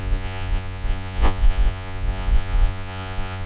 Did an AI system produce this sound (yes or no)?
yes